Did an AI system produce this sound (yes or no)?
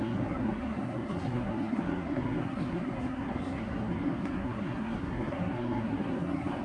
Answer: yes